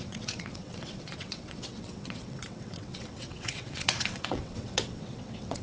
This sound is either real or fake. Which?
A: fake